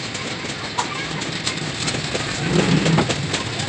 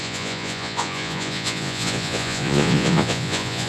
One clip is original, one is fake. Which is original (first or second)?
first